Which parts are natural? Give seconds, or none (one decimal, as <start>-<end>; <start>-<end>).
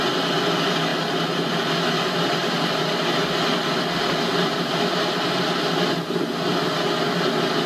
0.0-7.7